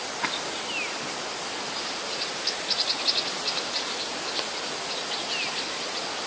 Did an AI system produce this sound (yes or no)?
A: no